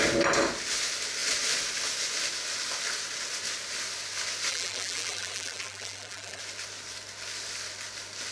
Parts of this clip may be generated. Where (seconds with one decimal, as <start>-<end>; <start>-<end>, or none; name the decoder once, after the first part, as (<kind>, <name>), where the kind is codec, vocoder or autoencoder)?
4.5-6.4 (vocoder, BigVGAN v2)